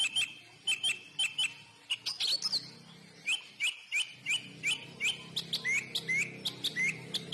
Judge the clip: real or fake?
real